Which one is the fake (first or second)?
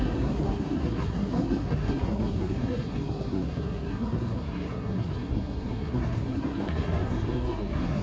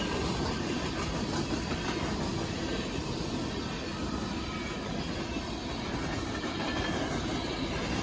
first